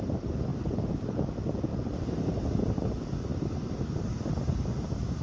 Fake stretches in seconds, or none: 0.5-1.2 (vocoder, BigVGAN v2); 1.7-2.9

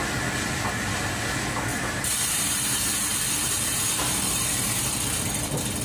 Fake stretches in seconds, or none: 1.7-5.2 (vocoder, BigVGAN v2)

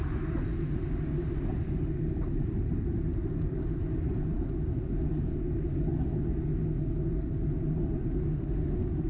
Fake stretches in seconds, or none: 8.1-9.1 (autoencoder, DAC-VAE)

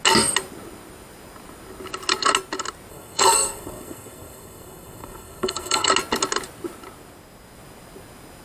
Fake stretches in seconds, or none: 2.9-5.9 (codec, SNAC)